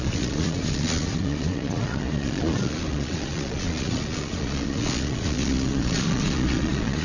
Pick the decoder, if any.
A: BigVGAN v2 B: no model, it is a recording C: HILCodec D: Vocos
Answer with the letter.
D